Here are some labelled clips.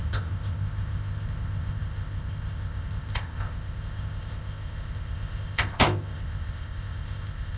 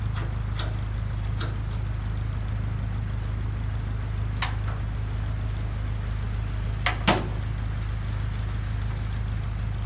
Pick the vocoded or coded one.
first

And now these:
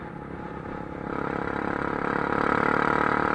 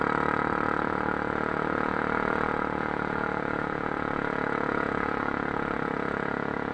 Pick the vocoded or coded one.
second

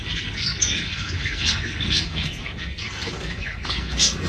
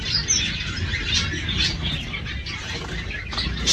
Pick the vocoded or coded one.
first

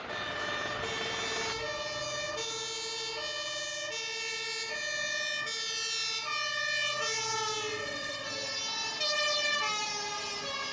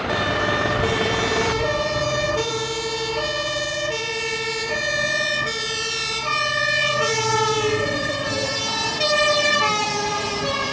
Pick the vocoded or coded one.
second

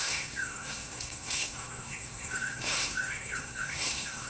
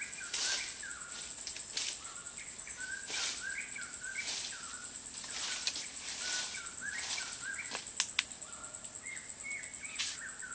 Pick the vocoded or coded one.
first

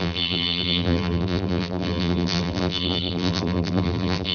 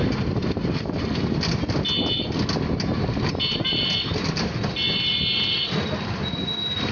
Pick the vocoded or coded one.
first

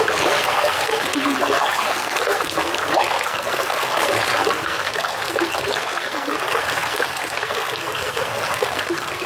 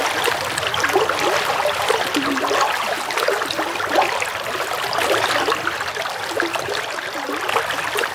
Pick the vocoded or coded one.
first